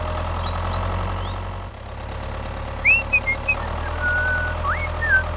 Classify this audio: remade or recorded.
recorded